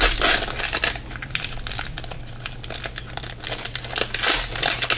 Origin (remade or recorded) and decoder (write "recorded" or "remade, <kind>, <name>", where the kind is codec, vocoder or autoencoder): recorded